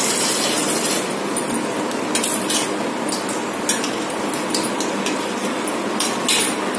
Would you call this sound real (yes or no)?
yes